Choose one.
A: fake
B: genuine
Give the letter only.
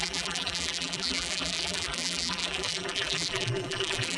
A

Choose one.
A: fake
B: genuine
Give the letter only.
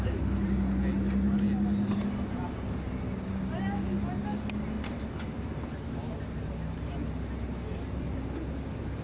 B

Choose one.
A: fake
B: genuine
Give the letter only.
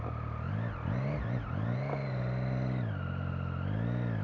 B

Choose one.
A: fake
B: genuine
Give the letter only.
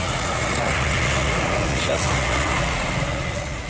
A